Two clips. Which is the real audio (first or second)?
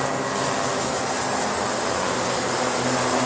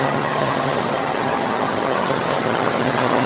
first